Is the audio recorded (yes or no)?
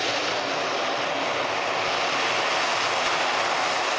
yes